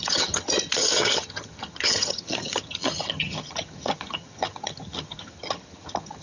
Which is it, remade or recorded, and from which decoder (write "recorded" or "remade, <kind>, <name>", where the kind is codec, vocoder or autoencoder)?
remade, vocoder, HiFi-GAN